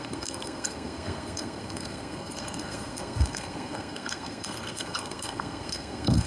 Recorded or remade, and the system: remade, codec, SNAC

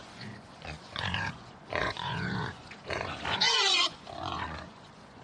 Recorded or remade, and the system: remade, vocoder, Vocos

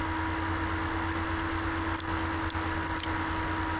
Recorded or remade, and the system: recorded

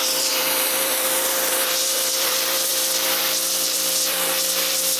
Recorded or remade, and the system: remade, vocoder, BigVGAN v2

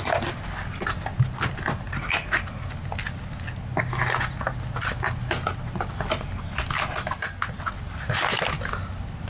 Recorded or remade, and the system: recorded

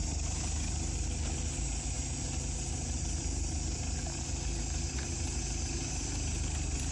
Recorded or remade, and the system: recorded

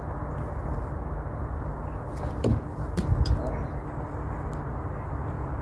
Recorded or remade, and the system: recorded